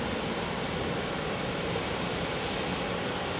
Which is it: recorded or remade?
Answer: recorded